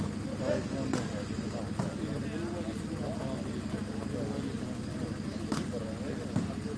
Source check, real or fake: real